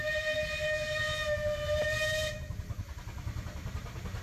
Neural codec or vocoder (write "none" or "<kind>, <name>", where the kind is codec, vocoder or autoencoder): none